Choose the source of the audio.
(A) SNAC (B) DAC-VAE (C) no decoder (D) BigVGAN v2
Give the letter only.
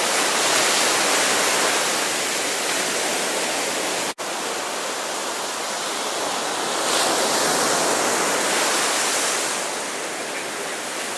C